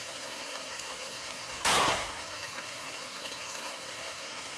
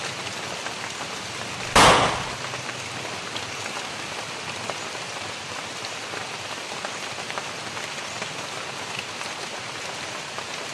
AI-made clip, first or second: first